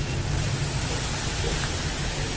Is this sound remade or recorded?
recorded